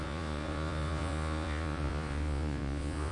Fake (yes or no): yes